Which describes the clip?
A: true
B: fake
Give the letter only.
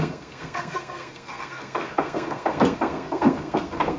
B